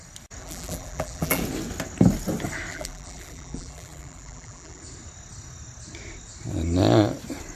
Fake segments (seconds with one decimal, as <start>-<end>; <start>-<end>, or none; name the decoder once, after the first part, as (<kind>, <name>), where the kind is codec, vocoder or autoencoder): 0.4-1.4 (vocoder, BigVGAN v2); 2.7-4.8